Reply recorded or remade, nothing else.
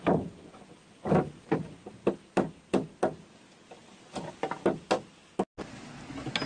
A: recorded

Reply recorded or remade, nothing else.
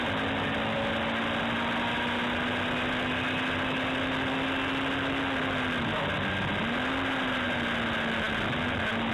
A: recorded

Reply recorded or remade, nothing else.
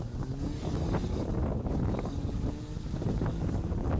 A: remade